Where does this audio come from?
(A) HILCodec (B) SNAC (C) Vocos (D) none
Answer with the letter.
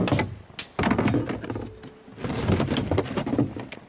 D